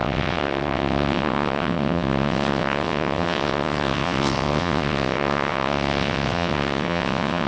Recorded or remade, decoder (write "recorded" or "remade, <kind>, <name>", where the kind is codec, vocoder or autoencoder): remade, vocoder, WaveNeXt